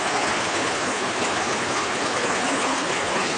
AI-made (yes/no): yes